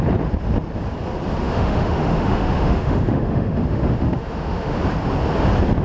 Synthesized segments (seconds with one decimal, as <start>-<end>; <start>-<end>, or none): 1.4-4.8